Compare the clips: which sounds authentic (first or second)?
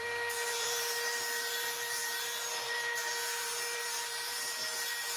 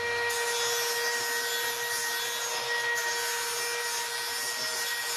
second